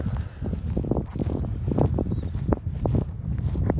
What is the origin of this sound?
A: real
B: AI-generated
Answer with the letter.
A